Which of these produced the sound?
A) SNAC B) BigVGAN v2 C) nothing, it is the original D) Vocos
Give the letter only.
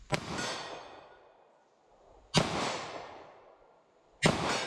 C